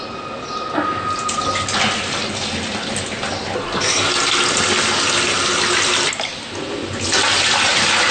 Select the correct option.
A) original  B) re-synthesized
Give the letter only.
A